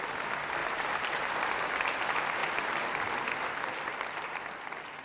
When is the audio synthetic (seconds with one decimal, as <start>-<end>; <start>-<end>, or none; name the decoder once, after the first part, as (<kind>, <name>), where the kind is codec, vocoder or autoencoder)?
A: 0.6-1.3 (vocoder, BigVGAN v2); 3.9-4.4